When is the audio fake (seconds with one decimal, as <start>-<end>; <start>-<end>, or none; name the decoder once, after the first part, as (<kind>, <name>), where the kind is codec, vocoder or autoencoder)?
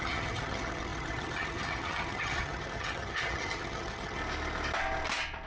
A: 0.0-4.2 (vocoder, HiFi-GAN)